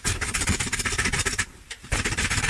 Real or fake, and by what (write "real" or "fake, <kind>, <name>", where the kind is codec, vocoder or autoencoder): fake, vocoder, BigVGAN v2